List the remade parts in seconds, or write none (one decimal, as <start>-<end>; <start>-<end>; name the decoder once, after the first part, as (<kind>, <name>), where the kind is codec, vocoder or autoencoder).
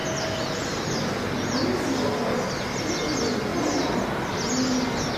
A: none